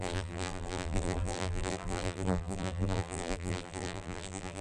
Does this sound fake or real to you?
fake